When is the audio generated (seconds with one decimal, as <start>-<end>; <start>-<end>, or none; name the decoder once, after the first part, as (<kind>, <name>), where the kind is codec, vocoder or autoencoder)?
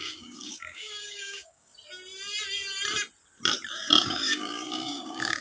0.0-1.7 (codec, DAC); 3.7-5.4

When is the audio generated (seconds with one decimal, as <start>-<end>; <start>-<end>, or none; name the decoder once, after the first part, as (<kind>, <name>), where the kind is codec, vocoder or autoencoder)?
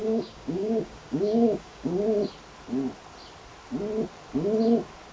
0.0-2.2 (codec, DAC)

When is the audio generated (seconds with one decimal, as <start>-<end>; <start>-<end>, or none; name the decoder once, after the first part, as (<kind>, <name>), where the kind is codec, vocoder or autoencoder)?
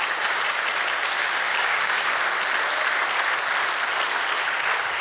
1.2-2.2 (codec, DAC)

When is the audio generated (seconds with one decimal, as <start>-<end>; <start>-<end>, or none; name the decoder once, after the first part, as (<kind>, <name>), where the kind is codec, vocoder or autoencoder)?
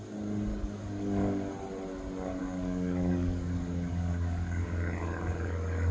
0.5-1.5 (codec, DAC); 2.4-5.9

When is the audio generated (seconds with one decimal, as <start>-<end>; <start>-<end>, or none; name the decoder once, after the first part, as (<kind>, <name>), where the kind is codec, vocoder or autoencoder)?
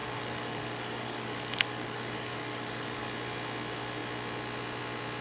0.0-3.1 (codec, DAC)